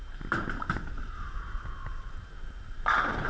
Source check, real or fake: real